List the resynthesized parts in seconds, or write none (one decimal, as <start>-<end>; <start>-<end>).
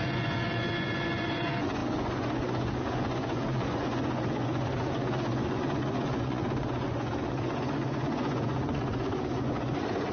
0.0-10.1